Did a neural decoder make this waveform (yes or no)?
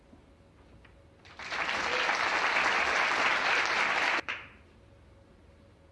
no